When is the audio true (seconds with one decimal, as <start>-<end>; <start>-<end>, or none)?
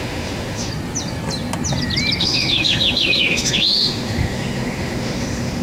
0.7-2.2